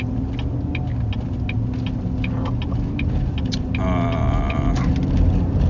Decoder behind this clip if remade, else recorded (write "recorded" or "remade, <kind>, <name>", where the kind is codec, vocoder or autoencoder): recorded